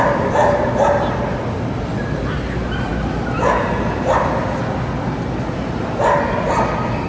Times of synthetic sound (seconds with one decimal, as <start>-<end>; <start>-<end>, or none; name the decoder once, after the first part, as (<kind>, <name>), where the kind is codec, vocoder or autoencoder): none